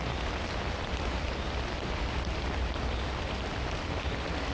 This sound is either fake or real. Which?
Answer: fake